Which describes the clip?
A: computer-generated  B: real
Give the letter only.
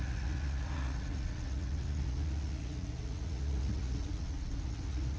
A